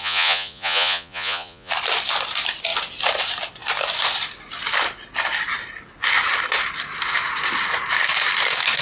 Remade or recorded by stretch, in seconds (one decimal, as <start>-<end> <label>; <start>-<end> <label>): 0.0-1.7 remade; 1.7-8.8 recorded